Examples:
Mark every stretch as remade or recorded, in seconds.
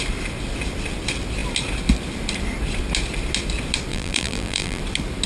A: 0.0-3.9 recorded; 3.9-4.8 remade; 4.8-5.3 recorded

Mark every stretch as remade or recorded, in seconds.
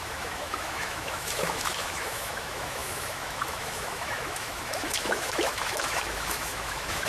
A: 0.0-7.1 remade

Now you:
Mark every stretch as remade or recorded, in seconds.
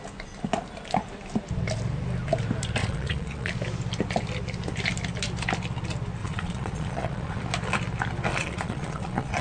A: 0.0-2.8 recorded; 2.8-3.5 remade; 3.5-6.2 recorded; 6.2-7.4 remade; 7.4-8.3 recorded; 8.3-9.4 remade